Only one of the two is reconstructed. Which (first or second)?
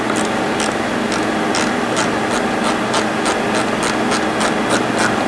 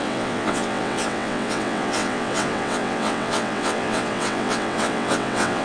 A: second